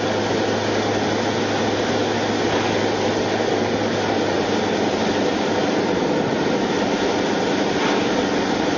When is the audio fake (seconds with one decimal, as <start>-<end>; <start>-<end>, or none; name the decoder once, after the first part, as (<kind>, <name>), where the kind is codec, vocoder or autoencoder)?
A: 5.3-6.3 (vocoder, BigVGAN v2)